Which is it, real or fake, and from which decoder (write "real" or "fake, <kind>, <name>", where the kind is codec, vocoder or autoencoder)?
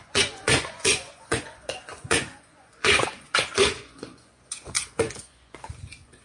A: fake, vocoder, Vocos